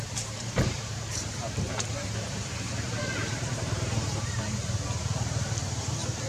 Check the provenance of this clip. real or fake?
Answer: fake